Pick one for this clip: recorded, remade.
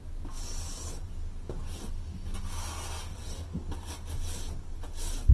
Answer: recorded